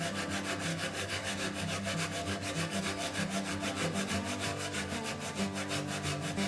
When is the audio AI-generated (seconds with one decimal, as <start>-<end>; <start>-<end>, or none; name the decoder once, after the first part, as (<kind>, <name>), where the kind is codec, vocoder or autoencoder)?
0.7-2.8 (codec, DAC); 4.5-5.1